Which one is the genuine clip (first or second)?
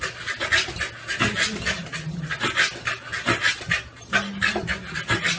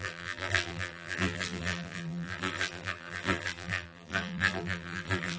first